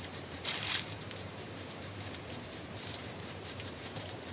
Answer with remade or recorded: remade